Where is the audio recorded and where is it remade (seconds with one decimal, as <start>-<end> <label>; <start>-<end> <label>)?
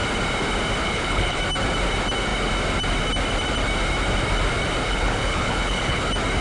0.0-0.8 recorded; 0.8-1.4 remade; 1.4-4.8 recorded; 4.8-6.0 remade; 6.0-6.4 recorded